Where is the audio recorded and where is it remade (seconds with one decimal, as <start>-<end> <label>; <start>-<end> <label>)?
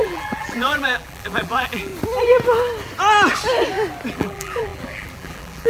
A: 0.0-1.9 remade; 1.9-4.1 recorded; 4.1-5.7 remade